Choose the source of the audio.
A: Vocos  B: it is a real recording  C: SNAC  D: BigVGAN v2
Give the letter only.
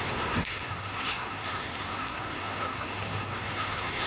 C